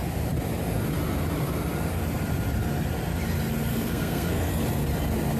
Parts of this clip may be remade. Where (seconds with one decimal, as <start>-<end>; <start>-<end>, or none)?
3.7-4.6